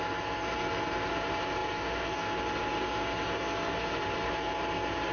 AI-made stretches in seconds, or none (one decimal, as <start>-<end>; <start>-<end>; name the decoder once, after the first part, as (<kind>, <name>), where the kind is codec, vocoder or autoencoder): none

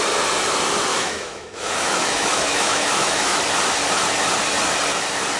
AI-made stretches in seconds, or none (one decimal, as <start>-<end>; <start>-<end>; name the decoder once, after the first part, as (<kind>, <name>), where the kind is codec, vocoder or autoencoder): 0.9-3.4 (autoencoder, DAC-VAE)

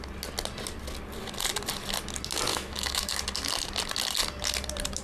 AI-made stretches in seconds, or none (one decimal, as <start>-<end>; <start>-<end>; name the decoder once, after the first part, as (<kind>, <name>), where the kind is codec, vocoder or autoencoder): 2.5-3.2 (autoencoder, DAC-VAE)